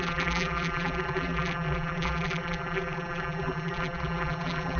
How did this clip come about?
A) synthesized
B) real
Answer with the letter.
A